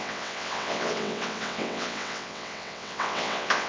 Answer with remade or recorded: remade